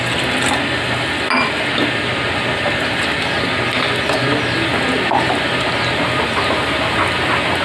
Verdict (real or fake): real